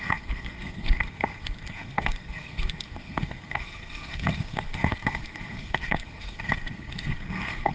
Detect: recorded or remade remade